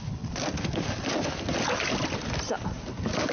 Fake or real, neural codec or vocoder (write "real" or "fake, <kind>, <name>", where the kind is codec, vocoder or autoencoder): real